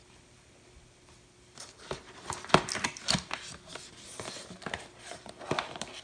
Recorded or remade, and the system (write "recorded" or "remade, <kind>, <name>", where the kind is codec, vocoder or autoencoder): recorded